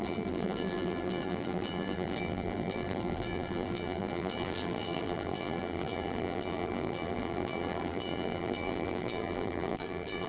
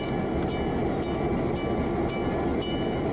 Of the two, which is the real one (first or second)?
second